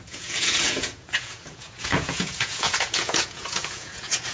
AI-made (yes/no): yes